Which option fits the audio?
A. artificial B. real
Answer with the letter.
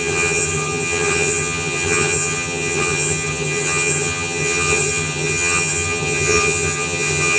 A